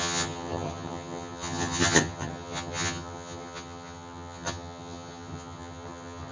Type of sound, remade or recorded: remade